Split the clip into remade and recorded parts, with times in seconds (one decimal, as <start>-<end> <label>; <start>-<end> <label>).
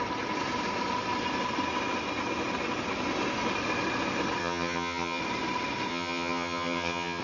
0.0-4.4 recorded; 4.4-5.2 remade; 5.2-5.9 recorded; 5.9-7.2 remade